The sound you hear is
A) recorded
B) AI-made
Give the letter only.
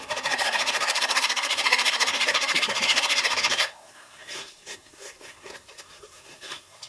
B